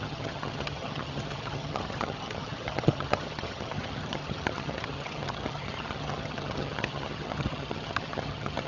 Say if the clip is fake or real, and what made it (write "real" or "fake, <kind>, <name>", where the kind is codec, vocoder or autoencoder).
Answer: fake, vocoder, HiFi-GAN